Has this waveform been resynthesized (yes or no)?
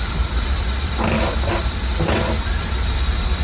no